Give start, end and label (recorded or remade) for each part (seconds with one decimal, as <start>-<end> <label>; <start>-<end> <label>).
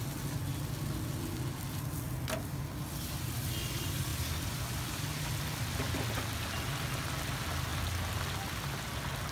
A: 0.0-9.3 recorded